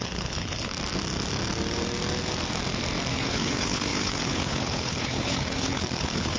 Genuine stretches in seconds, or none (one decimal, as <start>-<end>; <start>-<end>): 0.7-3.1